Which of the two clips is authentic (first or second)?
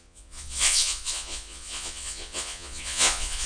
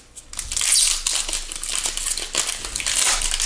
second